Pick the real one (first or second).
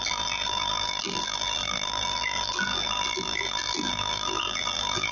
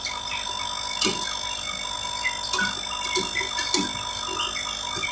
second